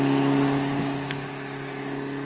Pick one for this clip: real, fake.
real